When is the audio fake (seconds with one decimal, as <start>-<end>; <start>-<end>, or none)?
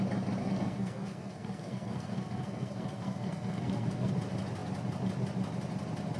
0.4-4.1